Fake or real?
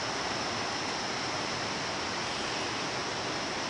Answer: real